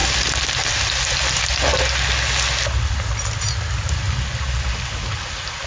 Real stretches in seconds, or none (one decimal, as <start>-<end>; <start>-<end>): 0.0-5.7